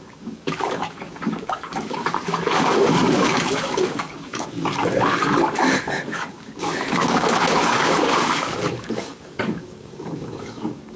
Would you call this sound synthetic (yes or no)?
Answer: yes